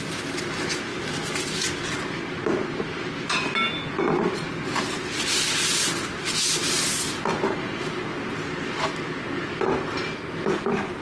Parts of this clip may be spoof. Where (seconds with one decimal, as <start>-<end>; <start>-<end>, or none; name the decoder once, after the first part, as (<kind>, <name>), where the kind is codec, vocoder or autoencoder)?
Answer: none